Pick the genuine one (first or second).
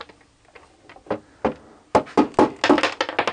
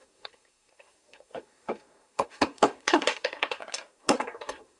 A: first